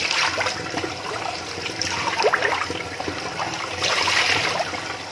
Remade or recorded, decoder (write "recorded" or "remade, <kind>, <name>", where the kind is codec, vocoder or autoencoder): recorded